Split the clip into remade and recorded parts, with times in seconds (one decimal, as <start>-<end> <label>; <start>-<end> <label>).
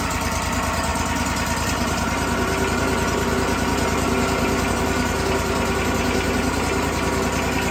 0.0-7.7 recorded